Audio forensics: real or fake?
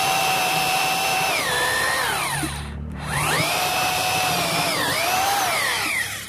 fake